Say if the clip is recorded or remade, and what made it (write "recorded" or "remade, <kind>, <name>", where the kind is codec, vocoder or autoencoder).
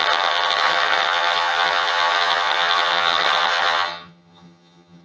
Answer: remade, vocoder, HiFi-GAN